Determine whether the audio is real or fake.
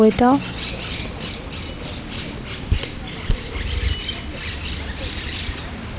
real